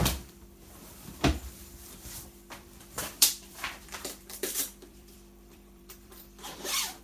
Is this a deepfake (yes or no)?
yes